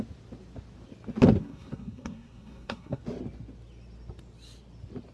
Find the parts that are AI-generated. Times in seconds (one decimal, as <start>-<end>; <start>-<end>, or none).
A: 1.4-3.0